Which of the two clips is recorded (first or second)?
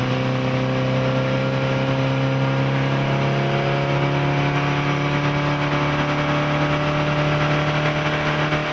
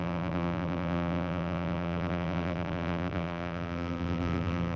first